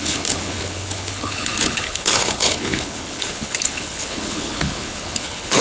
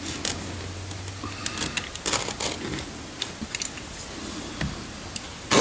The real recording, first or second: second